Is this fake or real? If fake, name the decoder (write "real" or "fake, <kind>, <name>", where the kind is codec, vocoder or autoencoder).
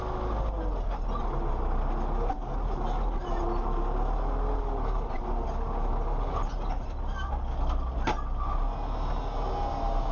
real